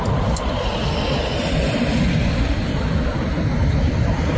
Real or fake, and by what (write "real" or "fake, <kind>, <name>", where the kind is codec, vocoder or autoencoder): real